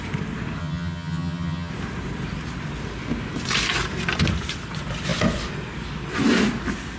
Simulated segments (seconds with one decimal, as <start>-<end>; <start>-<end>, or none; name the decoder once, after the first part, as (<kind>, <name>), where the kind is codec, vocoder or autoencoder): 0.6-1.7 (vocoder, HiFi-GAN)